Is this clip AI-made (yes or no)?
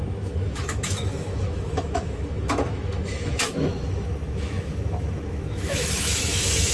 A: yes